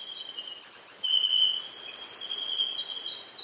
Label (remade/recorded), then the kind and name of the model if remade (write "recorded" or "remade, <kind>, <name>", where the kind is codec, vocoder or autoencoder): recorded